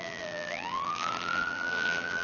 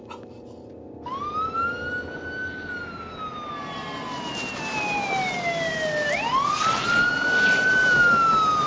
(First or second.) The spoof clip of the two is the first